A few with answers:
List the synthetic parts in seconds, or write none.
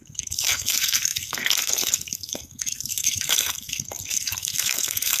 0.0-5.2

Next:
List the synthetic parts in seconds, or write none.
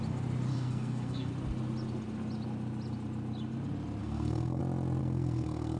0.5-1.3; 4.0-4.6; 5.0-5.8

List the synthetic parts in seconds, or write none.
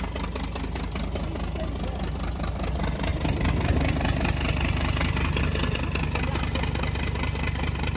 none